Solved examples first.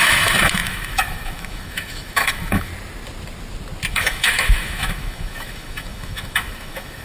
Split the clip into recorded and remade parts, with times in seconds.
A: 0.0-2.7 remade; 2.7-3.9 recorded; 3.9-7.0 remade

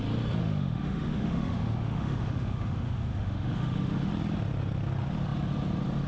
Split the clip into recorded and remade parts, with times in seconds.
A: 0.0-0.4 recorded; 0.4-4.1 remade; 4.1-6.1 recorded

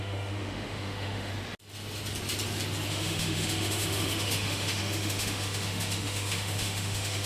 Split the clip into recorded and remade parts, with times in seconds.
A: 0.0-1.3 remade; 1.3-2.9 recorded; 2.9-7.3 remade